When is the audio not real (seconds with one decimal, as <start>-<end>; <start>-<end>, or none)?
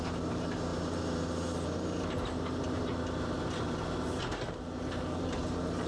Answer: 0.0-5.9